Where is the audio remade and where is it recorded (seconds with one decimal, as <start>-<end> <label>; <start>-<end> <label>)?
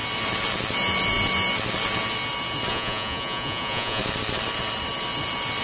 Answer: 0.0-2.7 recorded; 2.7-4.0 remade; 4.0-5.6 recorded